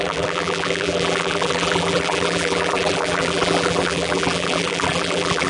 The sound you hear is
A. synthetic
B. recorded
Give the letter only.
A